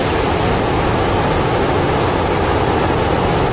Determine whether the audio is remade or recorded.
recorded